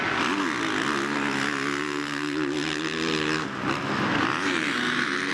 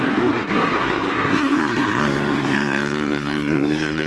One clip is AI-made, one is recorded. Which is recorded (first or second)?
first